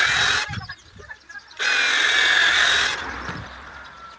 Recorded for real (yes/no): yes